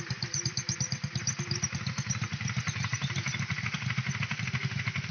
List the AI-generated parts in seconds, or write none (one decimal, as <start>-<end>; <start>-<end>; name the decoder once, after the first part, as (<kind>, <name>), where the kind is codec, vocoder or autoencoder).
2.9-4.5 (vocoder, BigVGAN v2)